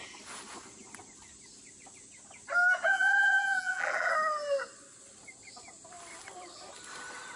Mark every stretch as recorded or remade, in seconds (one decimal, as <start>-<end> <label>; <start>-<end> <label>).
0.0-2.9 recorded; 2.9-4.1 remade; 4.1-7.4 recorded